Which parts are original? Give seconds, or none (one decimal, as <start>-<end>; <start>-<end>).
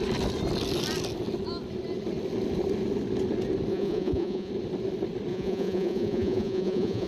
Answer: 0.0-3.7; 4.5-5.3